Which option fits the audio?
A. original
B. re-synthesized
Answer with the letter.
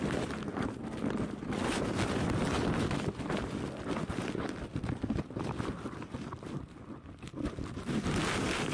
A